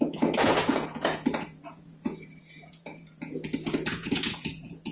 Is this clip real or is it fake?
fake